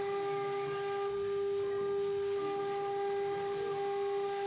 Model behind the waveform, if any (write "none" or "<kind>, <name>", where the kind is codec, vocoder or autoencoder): none